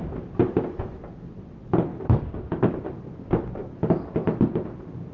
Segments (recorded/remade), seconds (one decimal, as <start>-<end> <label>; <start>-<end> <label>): 0.0-5.1 recorded